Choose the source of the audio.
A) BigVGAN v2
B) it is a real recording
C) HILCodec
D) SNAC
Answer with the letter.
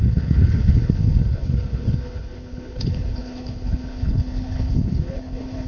C